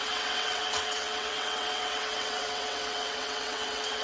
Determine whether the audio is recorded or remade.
remade